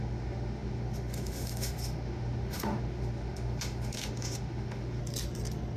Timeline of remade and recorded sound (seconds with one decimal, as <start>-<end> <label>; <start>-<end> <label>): 0.0-5.0 remade; 5.0-5.8 recorded